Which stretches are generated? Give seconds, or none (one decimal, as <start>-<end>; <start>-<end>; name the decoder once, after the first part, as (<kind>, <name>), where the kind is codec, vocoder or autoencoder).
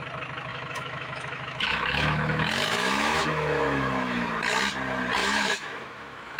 0.5-4.3 (autoencoder, DAC-VAE); 5.2-6.4